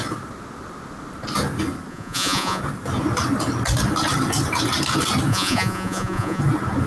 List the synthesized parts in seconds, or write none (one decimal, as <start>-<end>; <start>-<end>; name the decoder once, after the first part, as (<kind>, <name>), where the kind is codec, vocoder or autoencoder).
1.9-2.6 (vocoder, Vocos); 5.3-6.4